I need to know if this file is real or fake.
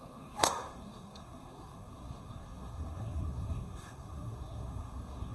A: fake